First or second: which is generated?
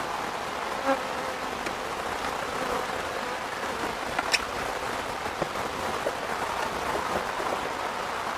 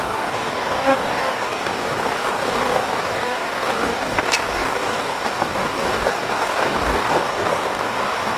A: second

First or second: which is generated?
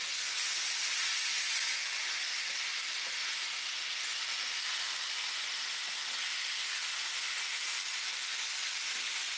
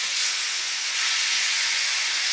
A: second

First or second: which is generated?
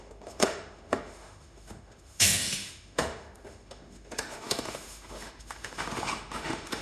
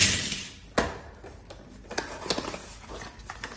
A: first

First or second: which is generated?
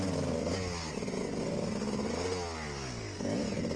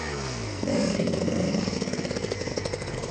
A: second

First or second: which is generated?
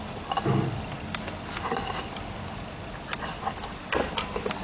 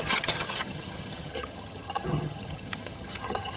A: second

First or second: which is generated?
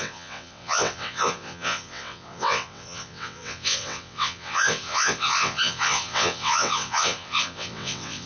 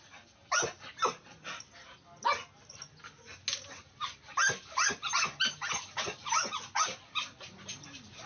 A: first